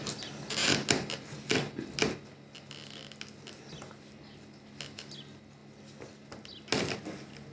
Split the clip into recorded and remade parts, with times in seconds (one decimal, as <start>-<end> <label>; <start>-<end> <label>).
0.0-7.5 recorded